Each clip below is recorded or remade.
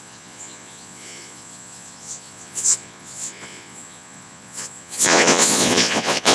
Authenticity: remade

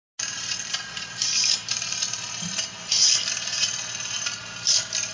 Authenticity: recorded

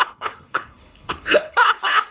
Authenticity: remade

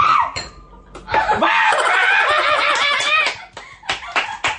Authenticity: recorded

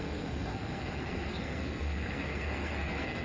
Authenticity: remade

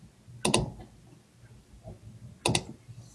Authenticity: recorded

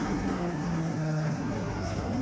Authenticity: remade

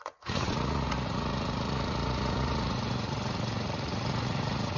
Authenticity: remade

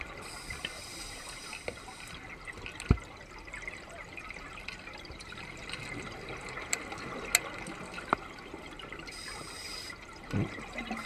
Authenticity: recorded